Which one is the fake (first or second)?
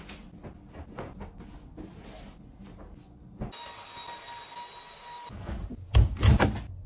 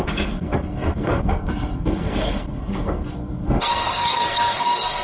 second